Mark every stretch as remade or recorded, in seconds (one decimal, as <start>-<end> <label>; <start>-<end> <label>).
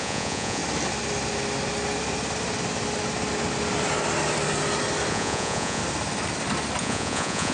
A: 0.0-0.6 remade; 0.6-5.1 recorded; 5.1-5.8 remade; 5.8-6.8 recorded; 6.8-7.5 remade